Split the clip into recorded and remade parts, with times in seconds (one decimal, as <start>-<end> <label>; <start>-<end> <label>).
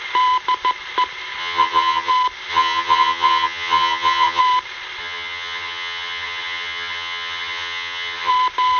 0.0-1.4 recorded; 1.4-2.1 remade; 2.1-2.5 recorded; 2.5-4.4 remade; 4.4-5.0 recorded; 5.0-8.3 remade; 8.3-8.8 recorded